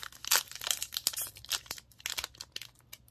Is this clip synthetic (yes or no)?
no